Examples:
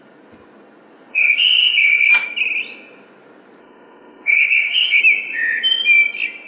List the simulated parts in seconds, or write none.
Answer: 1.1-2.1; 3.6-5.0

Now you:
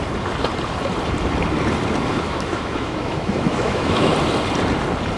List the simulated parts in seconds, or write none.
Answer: 2.1-4.1

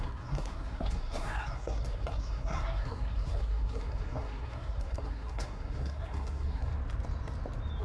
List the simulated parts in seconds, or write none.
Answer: 0.0-6.7

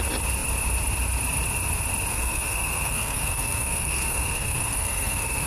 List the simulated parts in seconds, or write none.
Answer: 2.1-5.5

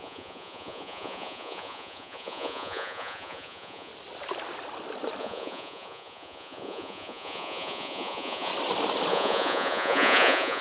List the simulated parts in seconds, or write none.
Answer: 0.0-3.9; 5.2-8.5; 9.1-10.6

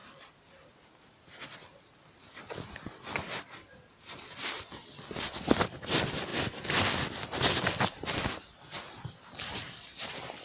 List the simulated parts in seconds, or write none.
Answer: none

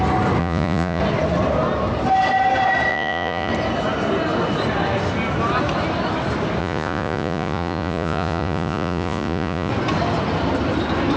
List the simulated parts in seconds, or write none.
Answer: 0.4-1.0; 2.9-3.5; 6.6-9.7

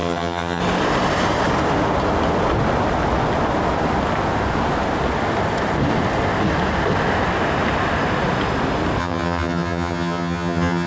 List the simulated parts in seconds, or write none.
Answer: 0.0-0.6; 9.0-10.9